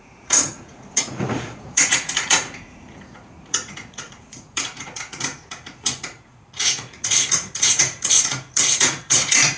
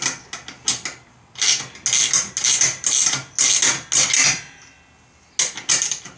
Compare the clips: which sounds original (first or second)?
second